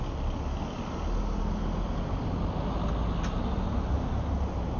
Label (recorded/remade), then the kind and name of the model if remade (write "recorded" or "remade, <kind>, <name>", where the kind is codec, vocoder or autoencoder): recorded